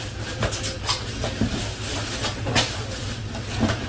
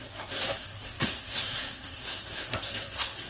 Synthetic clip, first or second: second